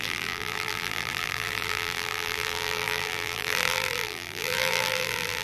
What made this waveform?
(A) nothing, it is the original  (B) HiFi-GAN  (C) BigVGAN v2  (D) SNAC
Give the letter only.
C